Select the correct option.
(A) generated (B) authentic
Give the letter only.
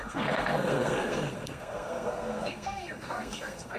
A